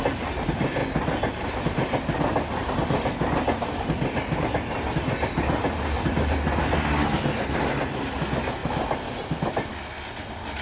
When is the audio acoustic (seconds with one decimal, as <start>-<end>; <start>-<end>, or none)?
0.0-8.6; 9.7-10.6